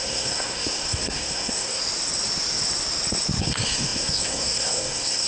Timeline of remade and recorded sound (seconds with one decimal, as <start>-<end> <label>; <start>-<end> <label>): 0.0-1.8 remade; 1.8-3.4 recorded; 3.4-5.3 remade